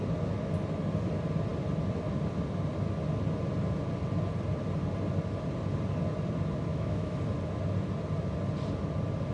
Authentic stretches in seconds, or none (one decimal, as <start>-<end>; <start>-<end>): 0.0-6.7; 7.2-9.3